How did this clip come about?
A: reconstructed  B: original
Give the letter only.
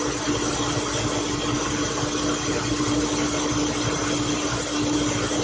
B